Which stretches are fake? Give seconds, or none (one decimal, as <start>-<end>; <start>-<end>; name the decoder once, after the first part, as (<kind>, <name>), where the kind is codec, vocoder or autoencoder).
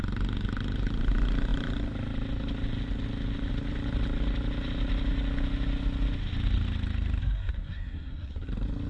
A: 7.2-8.5 (codec, SNAC)